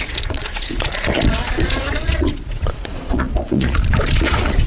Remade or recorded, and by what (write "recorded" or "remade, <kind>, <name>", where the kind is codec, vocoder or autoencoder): remade, vocoder, Vocos